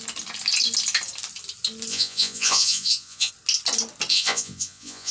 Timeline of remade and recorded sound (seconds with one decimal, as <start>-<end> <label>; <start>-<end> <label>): 0.0-1.9 recorded; 1.9-3.3 remade; 3.3-4.1 recorded; 4.1-5.1 remade